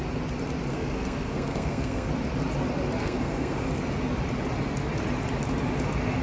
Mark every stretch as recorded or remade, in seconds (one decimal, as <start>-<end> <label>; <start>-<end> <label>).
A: 0.0-0.7 recorded; 0.7-2.1 remade; 2.1-3.0 recorded; 3.0-3.8 remade; 3.8-6.2 recorded